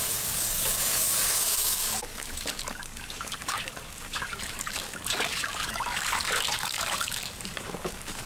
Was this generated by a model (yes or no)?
yes